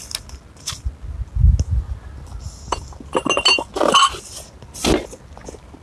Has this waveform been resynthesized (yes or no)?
no